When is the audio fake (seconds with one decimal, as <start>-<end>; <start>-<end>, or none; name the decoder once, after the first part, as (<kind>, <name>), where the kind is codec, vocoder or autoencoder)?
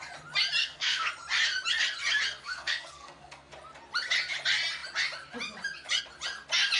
0.6-1.1 (codec, SNAC); 2.4-3.5